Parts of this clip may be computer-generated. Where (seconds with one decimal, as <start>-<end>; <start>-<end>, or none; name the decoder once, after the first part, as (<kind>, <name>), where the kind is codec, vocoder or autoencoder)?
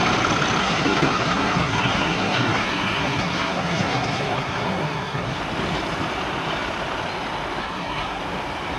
0.6-5.4 (codec, SNAC); 7.6-8.2